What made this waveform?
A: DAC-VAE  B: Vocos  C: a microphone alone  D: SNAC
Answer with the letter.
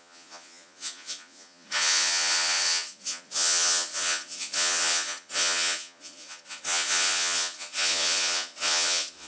B